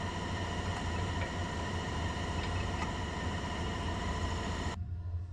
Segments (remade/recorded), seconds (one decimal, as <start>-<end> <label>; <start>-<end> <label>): 0.0-1.4 recorded; 1.4-4.6 remade; 4.6-5.3 recorded